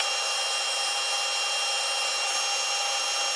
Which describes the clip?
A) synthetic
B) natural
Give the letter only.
B